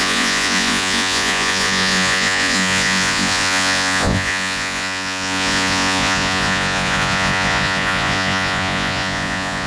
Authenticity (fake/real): fake